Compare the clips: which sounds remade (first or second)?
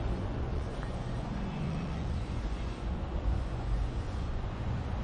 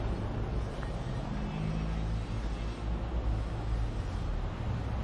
first